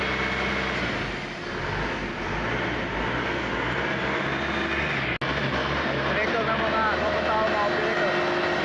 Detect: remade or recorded recorded